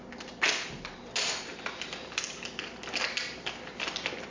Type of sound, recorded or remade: recorded